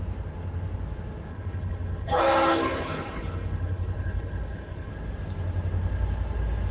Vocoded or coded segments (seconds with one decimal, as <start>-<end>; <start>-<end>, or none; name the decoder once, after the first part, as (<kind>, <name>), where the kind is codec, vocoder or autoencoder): 1.3-4.9 (codec, HILCodec)